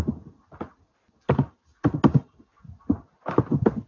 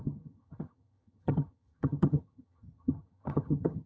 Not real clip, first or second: second